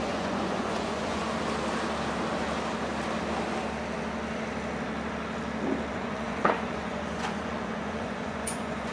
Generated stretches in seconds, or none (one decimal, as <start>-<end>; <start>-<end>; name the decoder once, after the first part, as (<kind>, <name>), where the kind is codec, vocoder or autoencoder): 0.0-1.2 (vocoder, Vocos); 5.9-8.9